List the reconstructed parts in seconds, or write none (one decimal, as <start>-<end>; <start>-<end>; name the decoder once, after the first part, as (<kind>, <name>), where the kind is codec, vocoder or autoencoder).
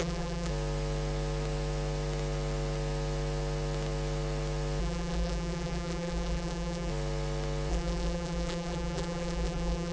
0.0-0.5 (vocoder, BigVGAN v2); 4.8-6.9; 7.7-9.9